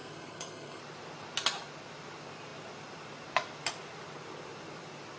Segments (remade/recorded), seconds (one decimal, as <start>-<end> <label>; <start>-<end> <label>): 0.0-0.8 remade; 0.8-5.2 recorded